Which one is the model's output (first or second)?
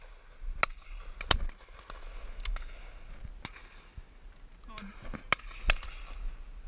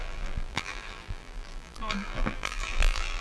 second